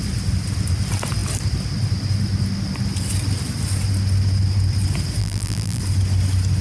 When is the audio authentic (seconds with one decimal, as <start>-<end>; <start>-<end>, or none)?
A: 0.0-5.2; 5.8-6.6